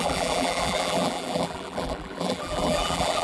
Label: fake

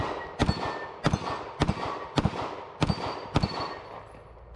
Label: real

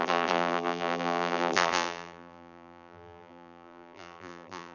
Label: fake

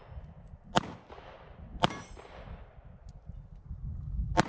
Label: real